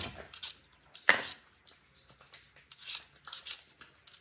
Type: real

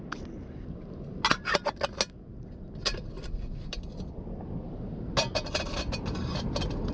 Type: real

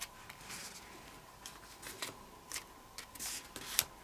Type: real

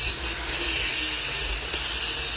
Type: real